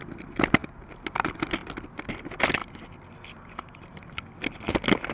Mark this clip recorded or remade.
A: recorded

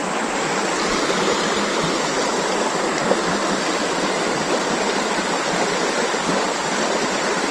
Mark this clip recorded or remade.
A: recorded